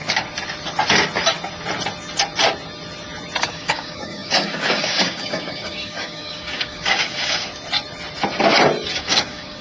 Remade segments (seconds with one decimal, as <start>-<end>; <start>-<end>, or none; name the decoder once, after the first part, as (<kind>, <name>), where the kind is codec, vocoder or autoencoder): 3.4-7.5 (codec, DAC); 8.9-9.6